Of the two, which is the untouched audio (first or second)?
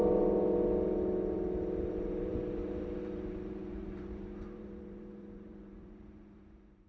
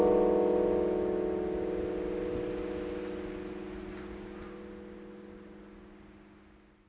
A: second